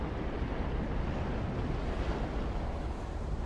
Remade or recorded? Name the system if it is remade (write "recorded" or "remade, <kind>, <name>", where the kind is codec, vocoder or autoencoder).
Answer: recorded